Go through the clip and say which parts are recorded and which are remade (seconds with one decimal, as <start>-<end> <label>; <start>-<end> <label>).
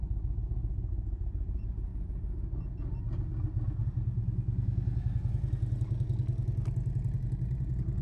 0.0-1.9 remade; 1.9-3.8 recorded; 3.8-4.2 remade; 4.2-7.2 recorded; 7.2-8.0 remade